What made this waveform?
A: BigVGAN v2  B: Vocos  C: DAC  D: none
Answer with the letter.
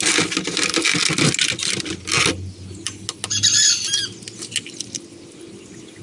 D